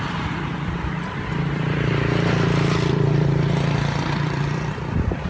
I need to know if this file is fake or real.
fake